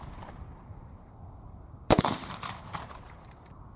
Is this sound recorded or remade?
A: remade